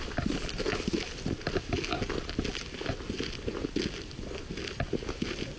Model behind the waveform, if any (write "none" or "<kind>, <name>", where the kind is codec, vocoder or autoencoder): none